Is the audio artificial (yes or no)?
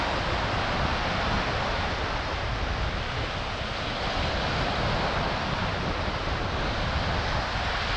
no